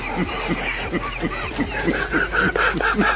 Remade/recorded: recorded